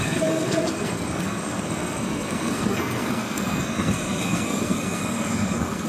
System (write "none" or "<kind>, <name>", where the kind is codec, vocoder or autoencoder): codec, SNAC